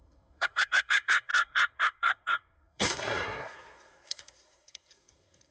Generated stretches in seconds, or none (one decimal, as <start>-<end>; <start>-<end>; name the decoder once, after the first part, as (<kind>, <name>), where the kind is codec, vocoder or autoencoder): 0.0-5.5 (codec, SNAC)